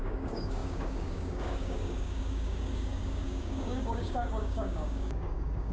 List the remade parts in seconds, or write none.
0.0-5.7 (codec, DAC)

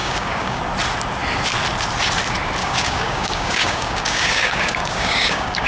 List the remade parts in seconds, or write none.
0.0-0.6 (codec, DAC); 2.6-5.7